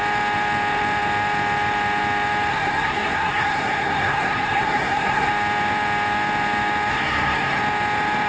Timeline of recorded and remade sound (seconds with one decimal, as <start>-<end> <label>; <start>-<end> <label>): 0.0-2.5 recorded; 2.5-5.3 remade; 5.3-6.9 recorded; 6.9-7.6 remade; 7.6-8.3 recorded